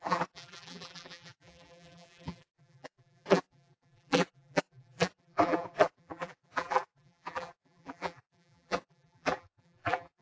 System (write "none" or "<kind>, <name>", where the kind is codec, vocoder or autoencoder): vocoder, BigVGAN v2